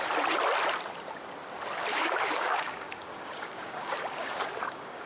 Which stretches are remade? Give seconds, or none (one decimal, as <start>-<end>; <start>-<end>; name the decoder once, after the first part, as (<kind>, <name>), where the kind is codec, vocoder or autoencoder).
1.9-5.1 (codec, DAC)